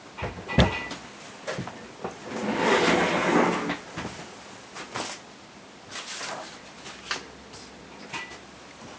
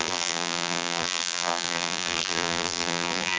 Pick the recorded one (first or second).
first